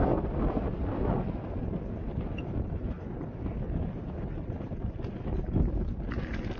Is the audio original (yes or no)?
yes